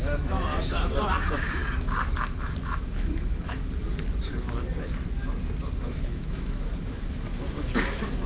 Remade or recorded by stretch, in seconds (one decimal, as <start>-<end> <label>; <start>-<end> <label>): 0.0-1.6 remade; 1.6-2.6 recorded; 2.6-3.6 remade; 3.6-5.8 recorded; 5.8-8.3 remade